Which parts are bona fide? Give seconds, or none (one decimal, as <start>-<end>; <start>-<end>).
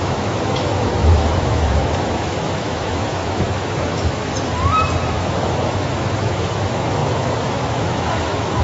4.3-5.1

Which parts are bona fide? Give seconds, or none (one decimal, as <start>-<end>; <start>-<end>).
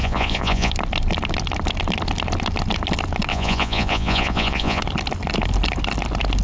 0.7-3.3; 4.8-6.4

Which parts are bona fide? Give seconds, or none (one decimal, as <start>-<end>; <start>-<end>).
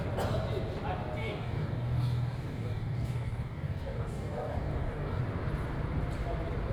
0.0-1.2; 5.2-6.7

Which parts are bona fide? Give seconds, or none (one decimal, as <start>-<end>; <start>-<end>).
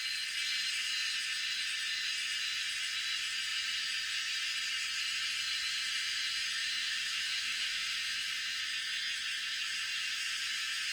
0.0-6.6; 8.6-10.9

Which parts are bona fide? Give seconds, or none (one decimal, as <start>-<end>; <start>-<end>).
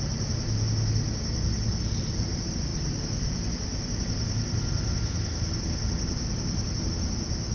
0.0-7.5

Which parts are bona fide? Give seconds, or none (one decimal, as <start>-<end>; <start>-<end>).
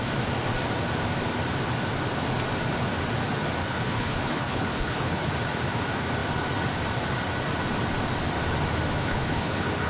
0.0-3.6; 5.3-8.9